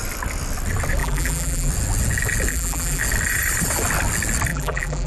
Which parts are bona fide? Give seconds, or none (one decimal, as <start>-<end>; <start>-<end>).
0.0-1.0; 1.7-2.5; 3.0-4.5